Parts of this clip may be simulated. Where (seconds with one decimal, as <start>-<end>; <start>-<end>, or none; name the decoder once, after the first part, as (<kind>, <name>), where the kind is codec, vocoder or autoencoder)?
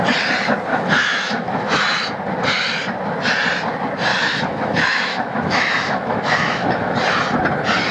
0.7-1.8 (autoencoder, DAC-VAE); 4.1-6.9